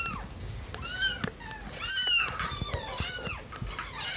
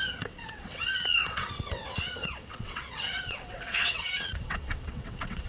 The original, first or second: first